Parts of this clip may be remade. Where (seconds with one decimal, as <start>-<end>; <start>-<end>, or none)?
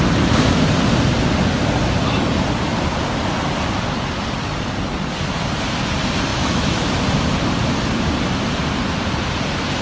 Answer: 6.3-6.9